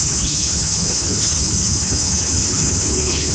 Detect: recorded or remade remade